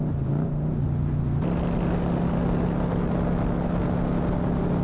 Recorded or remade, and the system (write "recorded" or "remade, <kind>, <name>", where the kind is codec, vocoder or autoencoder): recorded